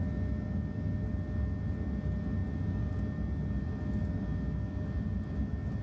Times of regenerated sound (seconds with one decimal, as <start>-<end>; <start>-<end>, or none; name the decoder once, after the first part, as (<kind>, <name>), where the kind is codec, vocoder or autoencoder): none